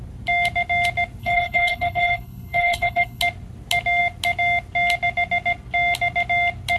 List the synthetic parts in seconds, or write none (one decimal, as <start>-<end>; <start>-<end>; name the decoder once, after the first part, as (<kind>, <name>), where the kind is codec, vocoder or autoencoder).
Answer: 1.2-3.2 (codec, HILCodec)